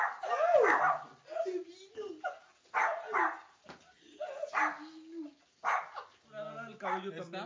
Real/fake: real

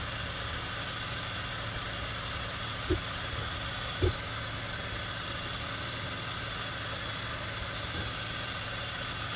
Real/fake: real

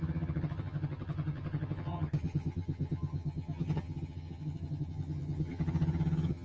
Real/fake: fake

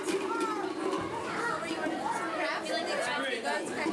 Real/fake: real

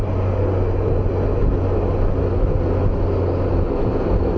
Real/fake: real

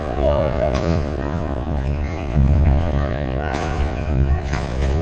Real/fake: fake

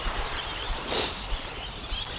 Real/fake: fake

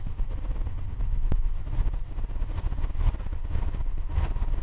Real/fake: real